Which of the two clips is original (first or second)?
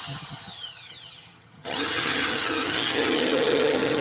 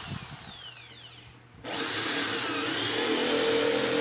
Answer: second